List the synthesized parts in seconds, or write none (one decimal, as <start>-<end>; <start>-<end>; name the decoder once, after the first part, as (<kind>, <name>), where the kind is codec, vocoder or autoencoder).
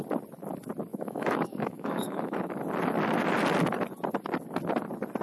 0.9-2.5 (autoencoder, DAC-VAE)